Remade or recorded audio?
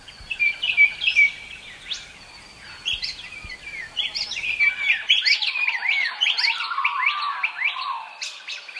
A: recorded